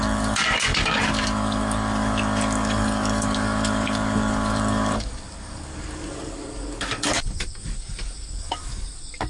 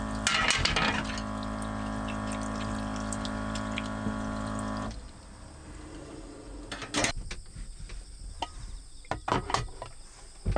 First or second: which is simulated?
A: first